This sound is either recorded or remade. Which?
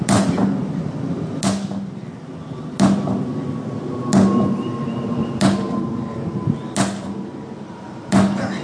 recorded